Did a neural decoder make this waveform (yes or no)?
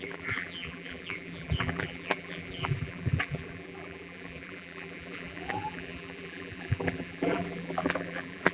yes